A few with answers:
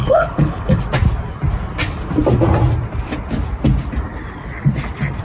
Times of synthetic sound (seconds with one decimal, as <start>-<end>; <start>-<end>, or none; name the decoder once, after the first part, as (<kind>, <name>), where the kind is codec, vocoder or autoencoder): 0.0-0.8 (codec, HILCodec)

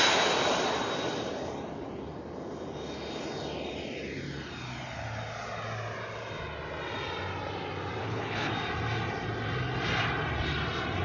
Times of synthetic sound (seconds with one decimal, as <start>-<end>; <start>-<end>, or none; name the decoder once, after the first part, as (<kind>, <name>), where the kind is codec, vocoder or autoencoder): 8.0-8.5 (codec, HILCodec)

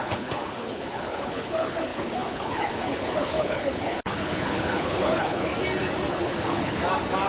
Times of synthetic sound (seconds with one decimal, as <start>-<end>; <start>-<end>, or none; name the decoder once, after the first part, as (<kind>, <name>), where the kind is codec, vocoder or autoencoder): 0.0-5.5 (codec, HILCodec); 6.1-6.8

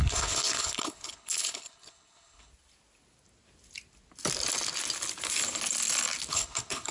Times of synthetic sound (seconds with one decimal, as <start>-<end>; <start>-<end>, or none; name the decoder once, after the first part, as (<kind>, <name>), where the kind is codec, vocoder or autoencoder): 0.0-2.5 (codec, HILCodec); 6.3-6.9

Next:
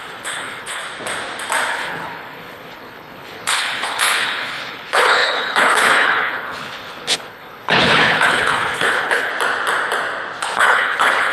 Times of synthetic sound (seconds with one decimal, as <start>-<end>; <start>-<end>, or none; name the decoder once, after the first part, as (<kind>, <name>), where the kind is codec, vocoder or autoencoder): 0.0-0.8 (codec, HILCodec); 1.7-9.3; 10.4-11.3